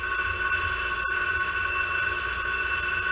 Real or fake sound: real